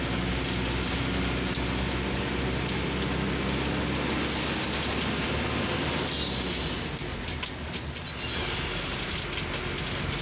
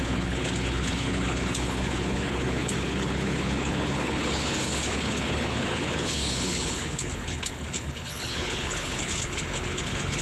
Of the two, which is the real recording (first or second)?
first